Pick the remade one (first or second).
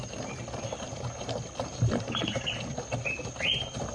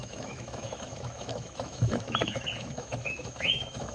second